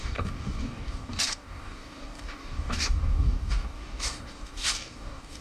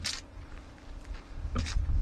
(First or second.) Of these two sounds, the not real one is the first